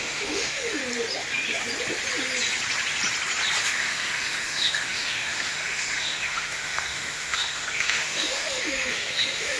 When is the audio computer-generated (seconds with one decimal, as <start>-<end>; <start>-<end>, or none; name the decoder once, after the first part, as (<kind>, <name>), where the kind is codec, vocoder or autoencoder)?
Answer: 0.0-0.8 (autoencoder, DAC-VAE); 3.6-9.6